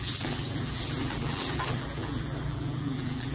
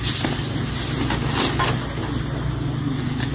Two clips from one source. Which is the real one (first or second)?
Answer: second